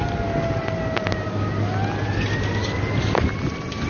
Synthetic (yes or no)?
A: no